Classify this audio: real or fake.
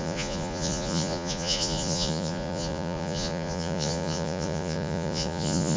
fake